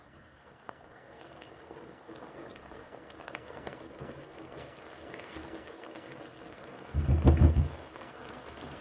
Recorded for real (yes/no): no